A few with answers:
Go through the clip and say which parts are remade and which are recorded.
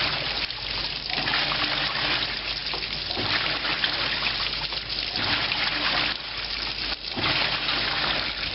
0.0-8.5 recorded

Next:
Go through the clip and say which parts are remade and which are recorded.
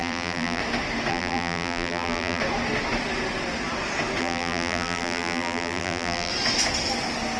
0.0-0.6 remade; 0.6-1.1 recorded; 1.1-2.4 remade; 2.4-4.2 recorded; 4.2-6.3 remade; 6.3-7.4 recorded